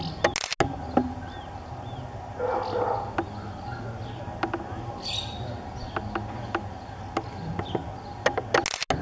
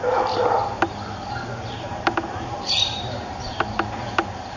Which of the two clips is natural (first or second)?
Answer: first